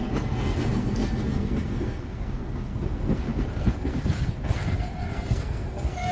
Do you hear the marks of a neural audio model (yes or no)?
yes